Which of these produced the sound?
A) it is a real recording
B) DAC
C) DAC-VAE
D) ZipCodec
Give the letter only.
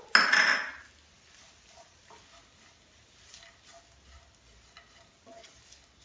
A